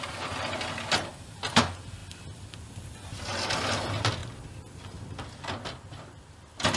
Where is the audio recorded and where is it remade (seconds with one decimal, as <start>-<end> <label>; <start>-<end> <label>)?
0.0-6.8 recorded